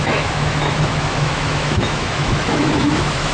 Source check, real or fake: fake